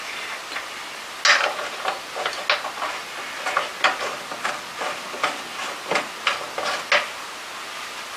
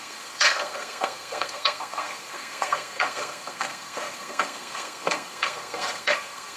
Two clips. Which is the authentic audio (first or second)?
first